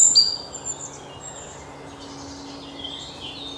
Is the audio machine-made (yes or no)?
no